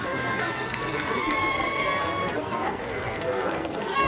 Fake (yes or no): yes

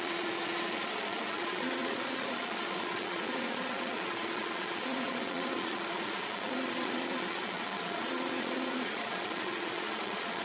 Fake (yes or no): yes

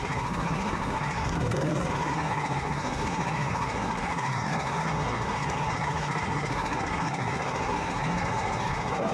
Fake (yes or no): yes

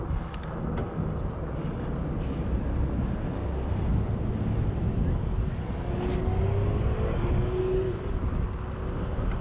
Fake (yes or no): no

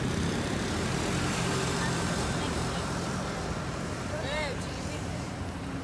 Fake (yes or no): yes